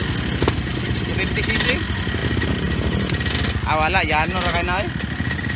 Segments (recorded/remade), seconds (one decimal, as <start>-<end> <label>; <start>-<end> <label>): 0.0-5.6 recorded